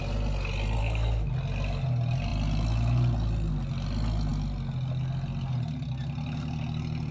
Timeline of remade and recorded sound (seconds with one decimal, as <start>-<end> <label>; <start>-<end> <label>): 0.0-0.8 recorded; 0.8-1.3 remade; 1.3-7.1 recorded